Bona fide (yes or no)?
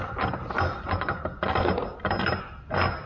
yes